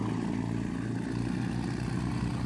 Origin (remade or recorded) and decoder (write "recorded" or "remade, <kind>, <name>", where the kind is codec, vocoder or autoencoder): recorded